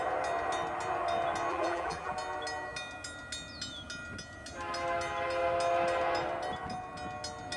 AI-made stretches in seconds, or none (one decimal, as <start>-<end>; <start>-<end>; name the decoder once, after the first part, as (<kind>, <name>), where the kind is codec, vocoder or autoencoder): 1.5-2.1 (vocoder, BigVGAN v2)